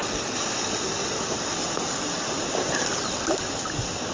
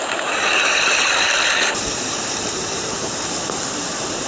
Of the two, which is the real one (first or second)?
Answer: first